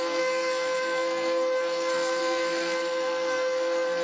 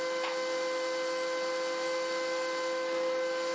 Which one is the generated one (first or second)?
first